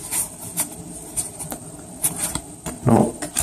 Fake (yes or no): yes